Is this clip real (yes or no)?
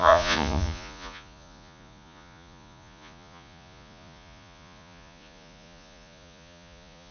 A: no